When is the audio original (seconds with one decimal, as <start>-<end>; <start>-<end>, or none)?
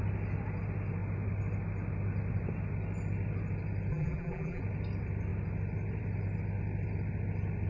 0.0-3.9; 4.6-7.7